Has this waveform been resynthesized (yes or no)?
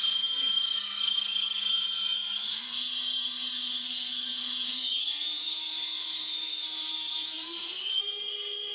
yes